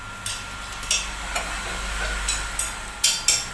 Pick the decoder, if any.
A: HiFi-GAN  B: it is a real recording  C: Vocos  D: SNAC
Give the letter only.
B